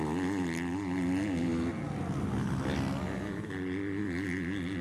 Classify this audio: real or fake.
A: real